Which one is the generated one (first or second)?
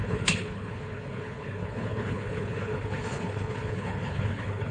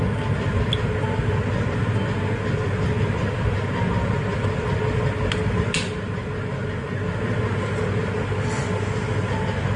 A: first